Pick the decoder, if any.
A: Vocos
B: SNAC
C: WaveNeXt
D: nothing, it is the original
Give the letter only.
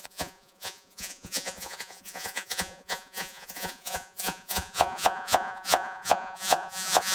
A